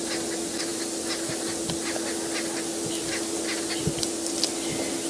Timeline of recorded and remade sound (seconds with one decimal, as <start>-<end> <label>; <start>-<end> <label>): 0.0-5.1 recorded